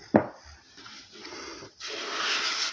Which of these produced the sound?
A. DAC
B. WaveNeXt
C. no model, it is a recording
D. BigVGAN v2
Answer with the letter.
C